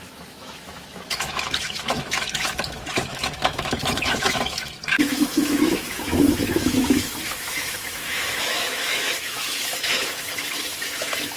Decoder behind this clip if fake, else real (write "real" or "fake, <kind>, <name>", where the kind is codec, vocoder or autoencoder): fake, autoencoder, DAC-VAE